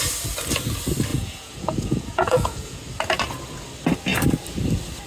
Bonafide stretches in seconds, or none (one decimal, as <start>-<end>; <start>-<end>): 0.0-1.1; 2.8-5.1